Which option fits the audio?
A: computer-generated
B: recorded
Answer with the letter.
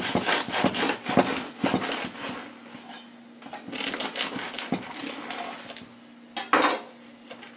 B